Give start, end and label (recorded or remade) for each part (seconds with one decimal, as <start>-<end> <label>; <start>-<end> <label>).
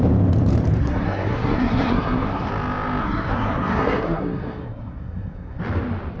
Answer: 0.0-0.8 recorded; 0.8-2.5 remade; 2.5-3.0 recorded; 3.0-5.6 remade; 5.6-6.2 recorded